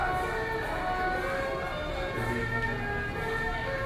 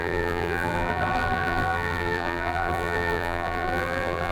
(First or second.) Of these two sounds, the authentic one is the first